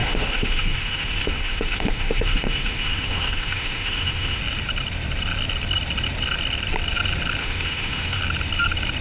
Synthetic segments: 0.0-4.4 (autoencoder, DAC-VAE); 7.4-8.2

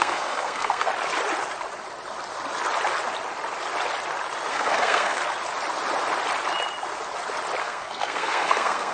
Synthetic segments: 0.0-0.9 (codec, SNAC); 4.5-5.2; 7.6-8.9

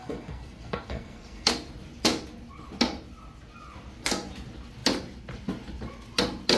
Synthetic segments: 0.0-1.5 (codec, SNAC)